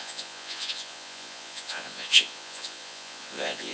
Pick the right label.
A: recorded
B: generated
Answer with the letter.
B